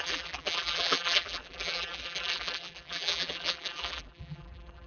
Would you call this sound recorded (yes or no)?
no